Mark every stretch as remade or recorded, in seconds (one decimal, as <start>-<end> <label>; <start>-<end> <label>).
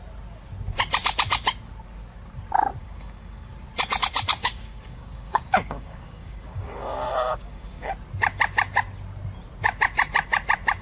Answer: 0.0-2.8 recorded; 2.8-3.5 remade; 3.5-4.3 recorded; 4.3-7.9 remade; 7.9-10.8 recorded